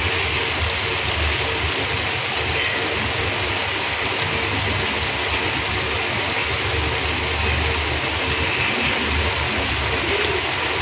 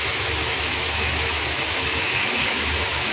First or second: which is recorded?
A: first